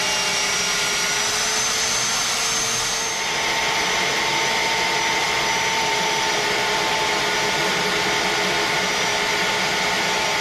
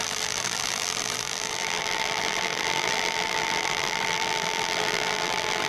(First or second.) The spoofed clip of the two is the second